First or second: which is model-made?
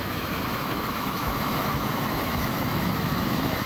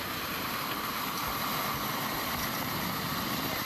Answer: first